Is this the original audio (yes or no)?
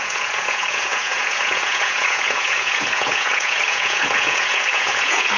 no